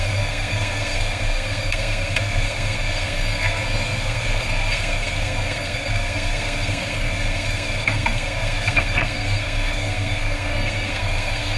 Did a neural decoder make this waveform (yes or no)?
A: yes